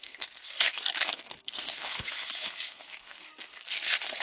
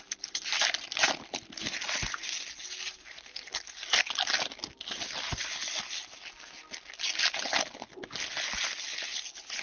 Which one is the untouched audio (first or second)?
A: second